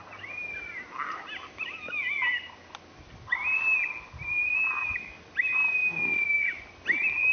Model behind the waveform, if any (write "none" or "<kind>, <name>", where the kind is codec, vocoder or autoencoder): none